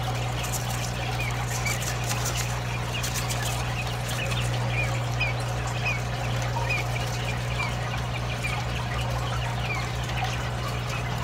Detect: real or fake real